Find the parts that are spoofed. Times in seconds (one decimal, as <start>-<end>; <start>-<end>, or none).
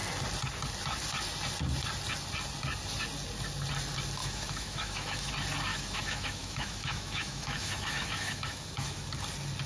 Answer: 4.2-5.3; 5.7-9.1